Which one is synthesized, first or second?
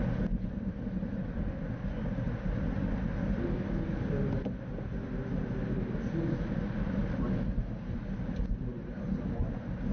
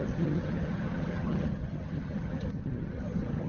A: second